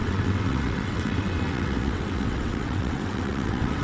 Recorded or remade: remade